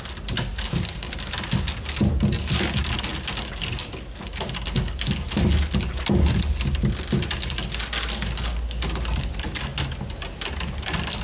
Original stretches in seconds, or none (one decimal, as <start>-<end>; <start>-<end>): 0.0-11.2